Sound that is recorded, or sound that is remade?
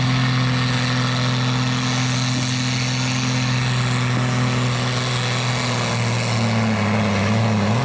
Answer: recorded